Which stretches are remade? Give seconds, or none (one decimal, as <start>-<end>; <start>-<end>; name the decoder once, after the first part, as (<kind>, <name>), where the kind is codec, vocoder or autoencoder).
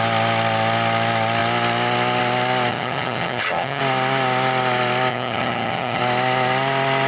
2.7-3.8 (vocoder, HiFi-GAN); 5.1-6.0